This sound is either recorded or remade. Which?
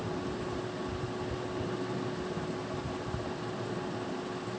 recorded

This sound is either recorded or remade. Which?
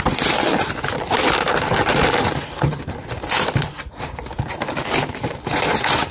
recorded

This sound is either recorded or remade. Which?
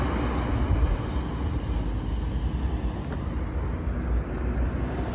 recorded